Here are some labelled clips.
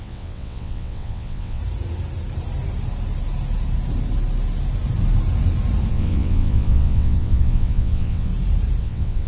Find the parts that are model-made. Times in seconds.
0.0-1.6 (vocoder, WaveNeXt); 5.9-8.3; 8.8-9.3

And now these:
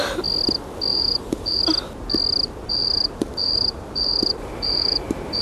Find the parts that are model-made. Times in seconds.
0.9-1.6 (vocoder, BigVGAN v2); 2.6-5.4

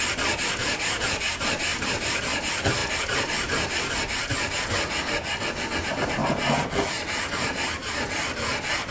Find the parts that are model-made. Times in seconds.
1.7-2.2 (vocoder, BigVGAN v2); 2.8-3.9

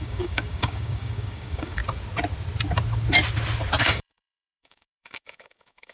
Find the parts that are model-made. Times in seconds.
0.0-1.8 (codec, DAC); 3.8-5.9

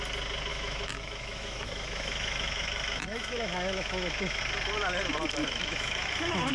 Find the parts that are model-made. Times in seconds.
0.5-4.4 (autoencoder, DAC-VAE); 5.4-6.5

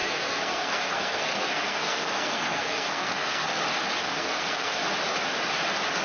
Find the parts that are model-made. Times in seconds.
0.0-3.6 (codec, SNAC); 4.0-4.8

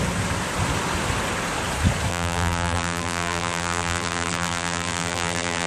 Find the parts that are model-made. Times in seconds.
2.1-5.7 (vocoder, BigVGAN v2)

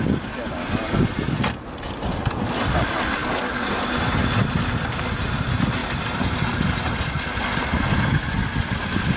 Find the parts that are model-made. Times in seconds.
none